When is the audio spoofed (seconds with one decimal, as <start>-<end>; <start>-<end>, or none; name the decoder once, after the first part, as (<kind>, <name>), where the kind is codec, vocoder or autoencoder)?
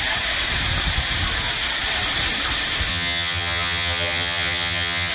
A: 2.9-5.1 (vocoder, HiFi-GAN)